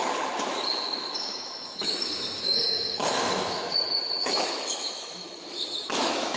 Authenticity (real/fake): fake